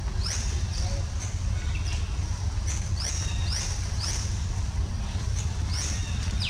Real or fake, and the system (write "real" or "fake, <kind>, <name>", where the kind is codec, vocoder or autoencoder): fake, vocoder, BigVGAN v2